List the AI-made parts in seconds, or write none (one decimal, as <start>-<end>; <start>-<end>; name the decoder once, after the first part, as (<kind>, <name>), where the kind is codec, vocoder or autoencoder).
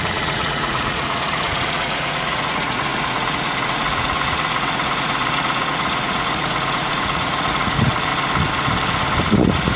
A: 0.0-8.1 (vocoder, Vocos); 9.2-9.8